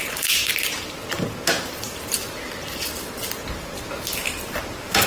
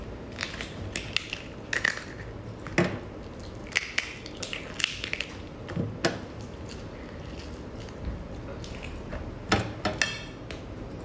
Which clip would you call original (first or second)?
second